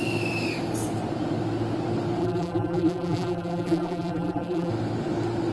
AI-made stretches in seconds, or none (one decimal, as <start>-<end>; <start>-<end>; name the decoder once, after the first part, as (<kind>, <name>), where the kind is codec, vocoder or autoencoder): 2.2-4.7 (vocoder, BigVGAN v2)